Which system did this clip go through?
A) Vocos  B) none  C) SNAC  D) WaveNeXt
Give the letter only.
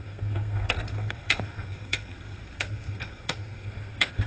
C